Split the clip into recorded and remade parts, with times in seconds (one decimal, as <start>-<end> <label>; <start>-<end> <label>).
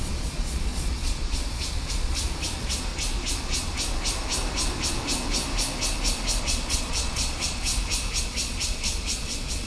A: 0.0-2.9 remade; 2.9-6.4 recorded; 6.4-7.7 remade; 7.7-8.2 recorded; 8.2-9.7 remade